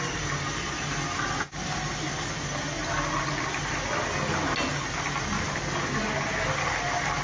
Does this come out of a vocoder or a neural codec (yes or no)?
no